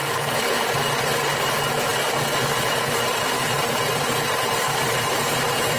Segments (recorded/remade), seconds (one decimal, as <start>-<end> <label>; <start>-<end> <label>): 0.0-5.8 recorded